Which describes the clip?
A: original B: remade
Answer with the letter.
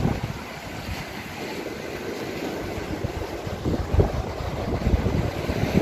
A